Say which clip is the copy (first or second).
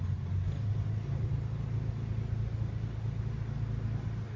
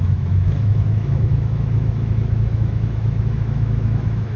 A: second